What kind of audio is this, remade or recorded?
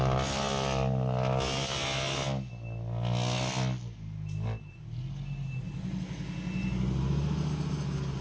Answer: recorded